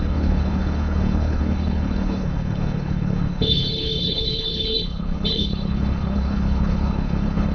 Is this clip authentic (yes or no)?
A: no